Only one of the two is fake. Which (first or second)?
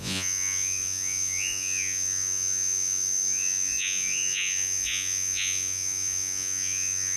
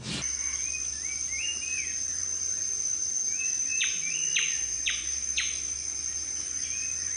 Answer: first